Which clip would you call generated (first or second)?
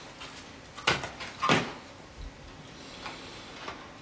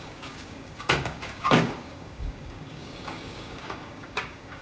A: second